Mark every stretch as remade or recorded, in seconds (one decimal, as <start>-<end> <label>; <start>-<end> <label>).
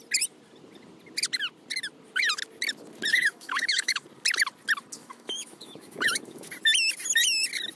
0.0-3.1 recorded; 3.1-4.0 remade; 4.0-5.0 recorded; 5.0-6.5 remade; 6.5-7.8 recorded